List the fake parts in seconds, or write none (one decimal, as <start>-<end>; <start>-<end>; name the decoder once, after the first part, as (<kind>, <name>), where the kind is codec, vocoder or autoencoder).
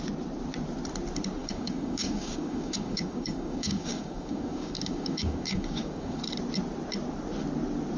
1.4-6.2 (codec, DAC)